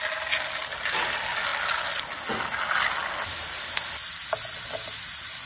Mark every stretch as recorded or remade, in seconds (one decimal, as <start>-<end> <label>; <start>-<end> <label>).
0.0-5.5 recorded